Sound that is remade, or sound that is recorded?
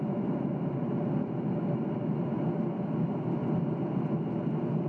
recorded